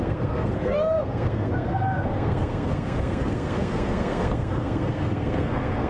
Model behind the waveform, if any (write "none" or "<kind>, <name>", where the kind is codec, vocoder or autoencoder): codec, SNAC